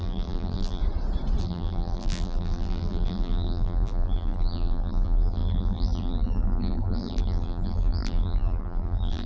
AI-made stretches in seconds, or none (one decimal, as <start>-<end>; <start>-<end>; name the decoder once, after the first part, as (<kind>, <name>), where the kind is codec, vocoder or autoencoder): 0.0-0.8 (vocoder, BigVGAN v2); 1.4-9.3

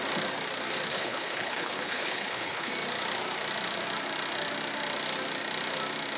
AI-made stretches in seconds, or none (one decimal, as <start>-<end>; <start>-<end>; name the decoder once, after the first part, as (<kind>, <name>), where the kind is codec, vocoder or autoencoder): 0.9-2.7 (codec, HILCodec)